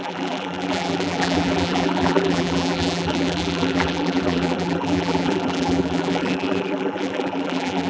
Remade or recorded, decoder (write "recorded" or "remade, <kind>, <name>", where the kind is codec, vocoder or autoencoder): remade, vocoder, BigVGAN v2